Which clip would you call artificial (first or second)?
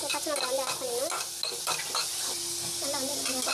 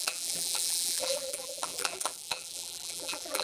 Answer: second